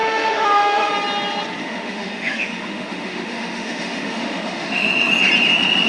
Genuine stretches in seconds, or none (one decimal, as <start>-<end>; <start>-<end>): 0.9-1.6; 5.1-5.9